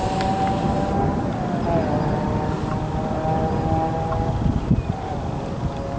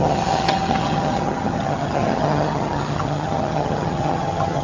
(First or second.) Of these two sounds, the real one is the first